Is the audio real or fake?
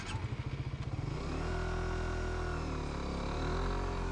real